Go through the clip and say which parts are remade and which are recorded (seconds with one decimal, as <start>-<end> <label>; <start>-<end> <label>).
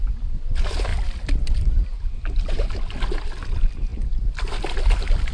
0.0-5.3 recorded